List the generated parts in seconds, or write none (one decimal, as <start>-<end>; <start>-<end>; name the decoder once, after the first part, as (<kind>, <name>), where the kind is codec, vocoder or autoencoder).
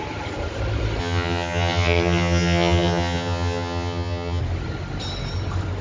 1.0-4.4 (vocoder, HiFi-GAN)